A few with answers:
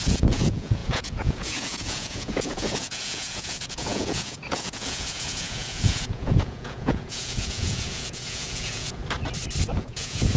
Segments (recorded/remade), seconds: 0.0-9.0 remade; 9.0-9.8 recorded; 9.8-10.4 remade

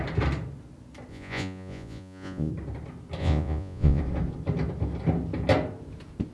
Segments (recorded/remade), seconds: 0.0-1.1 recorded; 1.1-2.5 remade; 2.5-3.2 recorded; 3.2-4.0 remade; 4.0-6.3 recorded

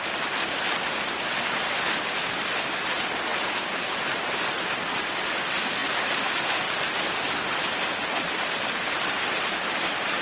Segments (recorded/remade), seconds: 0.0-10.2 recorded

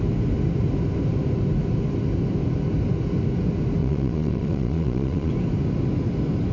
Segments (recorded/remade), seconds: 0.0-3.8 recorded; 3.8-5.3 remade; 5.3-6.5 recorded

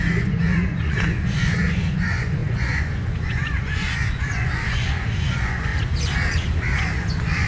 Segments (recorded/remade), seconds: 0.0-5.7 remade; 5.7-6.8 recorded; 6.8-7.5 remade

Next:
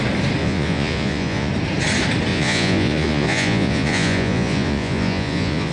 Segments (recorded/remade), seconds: 0.0-0.4 recorded; 0.4-1.5 remade; 1.5-2.3 recorded; 2.3-5.7 remade

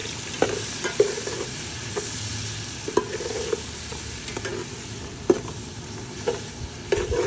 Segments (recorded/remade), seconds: 0.0-7.3 recorded